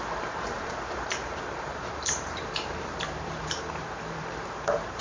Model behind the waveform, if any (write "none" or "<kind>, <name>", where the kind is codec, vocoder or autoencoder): vocoder, BigVGAN v2